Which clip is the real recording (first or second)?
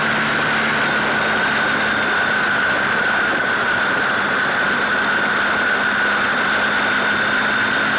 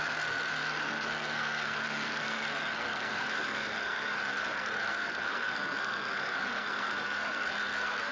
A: first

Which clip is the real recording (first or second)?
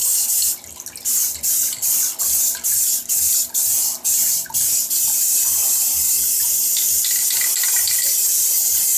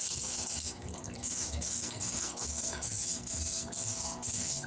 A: first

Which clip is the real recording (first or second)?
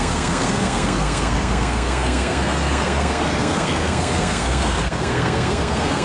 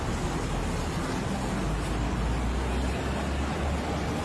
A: second